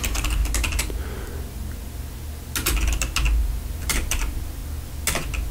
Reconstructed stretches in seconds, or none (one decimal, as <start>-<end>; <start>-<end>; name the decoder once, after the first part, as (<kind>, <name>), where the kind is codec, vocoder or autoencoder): 0.0-0.4 (vocoder, BigVGAN v2); 3.4-4.6